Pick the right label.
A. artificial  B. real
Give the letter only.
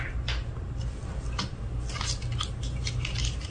B